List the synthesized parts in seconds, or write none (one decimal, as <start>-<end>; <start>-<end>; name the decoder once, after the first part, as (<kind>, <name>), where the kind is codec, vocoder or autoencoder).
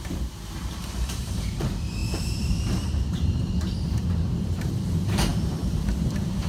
0.0-6.5 (vocoder, BigVGAN v2)